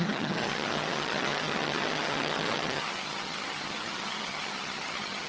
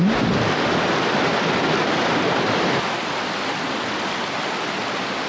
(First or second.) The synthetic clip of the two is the first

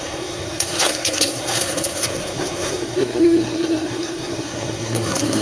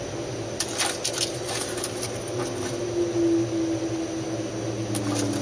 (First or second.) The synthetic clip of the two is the first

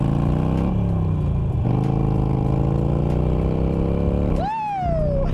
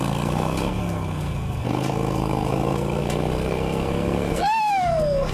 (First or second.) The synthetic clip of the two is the second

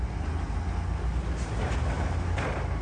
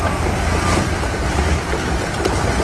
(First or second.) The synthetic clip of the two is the second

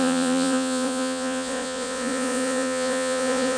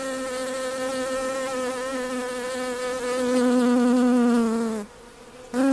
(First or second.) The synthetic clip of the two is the first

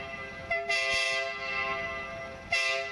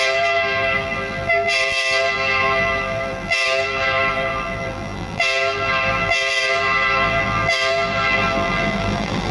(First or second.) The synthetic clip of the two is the second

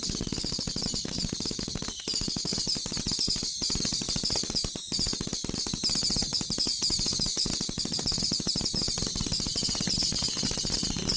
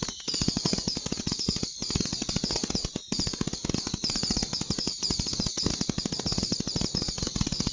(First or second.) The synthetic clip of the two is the second